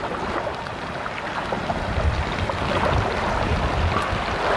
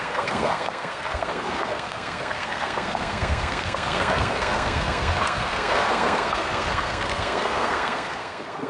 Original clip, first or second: first